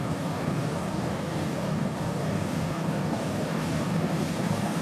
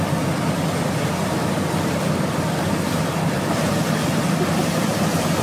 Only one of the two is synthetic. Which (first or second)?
first